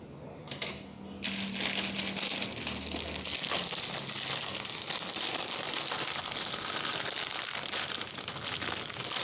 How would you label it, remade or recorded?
recorded